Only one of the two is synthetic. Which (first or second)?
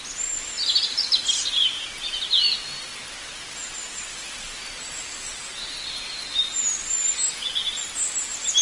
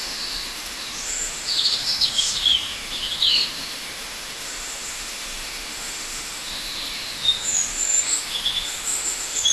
second